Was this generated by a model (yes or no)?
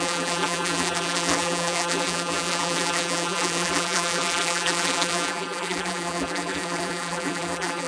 yes